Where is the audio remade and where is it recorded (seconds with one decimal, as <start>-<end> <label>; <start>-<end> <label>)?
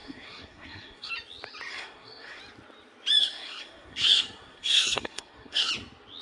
0.0-1.1 remade; 1.1-1.7 recorded; 1.7-2.4 remade; 2.4-3.2 recorded; 3.2-5.7 remade; 5.7-6.2 recorded